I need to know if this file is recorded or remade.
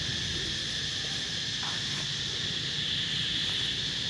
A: recorded